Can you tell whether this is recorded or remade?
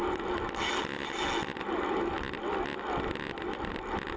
recorded